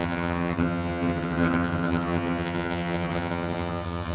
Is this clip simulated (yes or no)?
yes